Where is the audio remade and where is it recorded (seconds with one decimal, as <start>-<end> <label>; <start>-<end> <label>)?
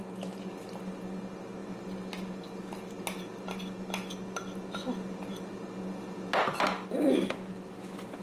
0.0-8.2 recorded